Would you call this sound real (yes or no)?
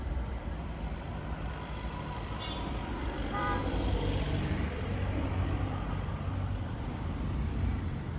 no